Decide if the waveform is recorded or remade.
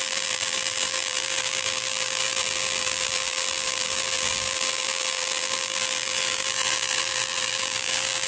remade